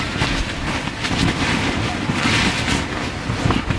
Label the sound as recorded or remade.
recorded